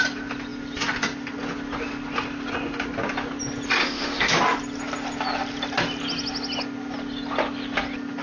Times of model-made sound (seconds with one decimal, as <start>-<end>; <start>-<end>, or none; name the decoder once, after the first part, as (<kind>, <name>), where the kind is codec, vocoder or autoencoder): 3.8-4.3 (autoencoder, DAC-VAE)